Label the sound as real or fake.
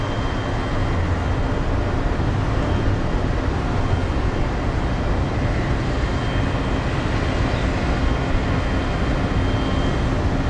real